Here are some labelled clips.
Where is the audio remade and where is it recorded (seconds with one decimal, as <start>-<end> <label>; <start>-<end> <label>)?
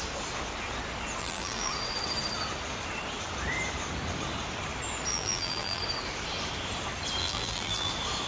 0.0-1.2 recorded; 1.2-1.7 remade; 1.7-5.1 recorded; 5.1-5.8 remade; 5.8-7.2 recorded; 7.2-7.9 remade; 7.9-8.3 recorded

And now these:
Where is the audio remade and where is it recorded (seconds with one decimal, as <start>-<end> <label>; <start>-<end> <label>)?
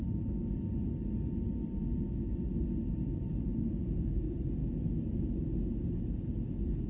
0.0-6.9 recorded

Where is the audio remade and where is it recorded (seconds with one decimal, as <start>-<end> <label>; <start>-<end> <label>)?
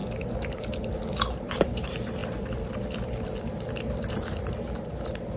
0.0-1.2 recorded; 1.2-2.2 remade; 2.2-4.1 recorded; 4.1-5.4 remade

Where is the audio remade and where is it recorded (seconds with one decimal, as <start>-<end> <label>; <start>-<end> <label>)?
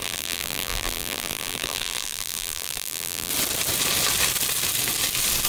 0.0-3.3 remade; 3.3-5.5 recorded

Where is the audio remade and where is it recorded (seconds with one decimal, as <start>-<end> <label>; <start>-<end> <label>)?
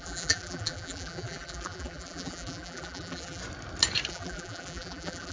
0.0-3.4 remade; 3.4-4.1 recorded; 4.1-5.3 remade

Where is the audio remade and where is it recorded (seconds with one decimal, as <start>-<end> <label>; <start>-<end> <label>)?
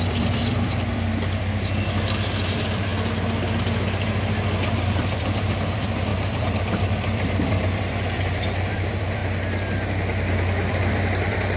0.0-2.9 remade; 2.9-4.9 recorded; 4.9-9.2 remade; 9.2-10.7 recorded; 10.7-11.6 remade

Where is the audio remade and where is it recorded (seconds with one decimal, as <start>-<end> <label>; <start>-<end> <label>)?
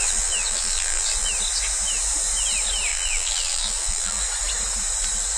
0.0-1.3 remade; 1.3-2.9 recorded; 2.9-4.2 remade; 4.2-5.4 recorded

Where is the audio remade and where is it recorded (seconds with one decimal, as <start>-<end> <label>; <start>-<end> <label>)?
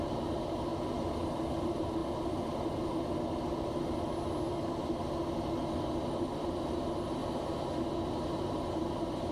0.0-0.7 remade; 0.7-1.5 recorded; 1.5-2.0 remade; 2.0-6.2 recorded; 6.2-7.2 remade; 7.2-8.1 recorded; 8.1-9.3 remade